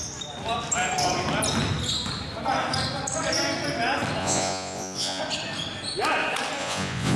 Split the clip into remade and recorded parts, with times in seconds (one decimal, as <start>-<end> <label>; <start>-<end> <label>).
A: 0.0-4.2 recorded; 4.2-5.2 remade; 5.2-6.6 recorded; 6.6-7.2 remade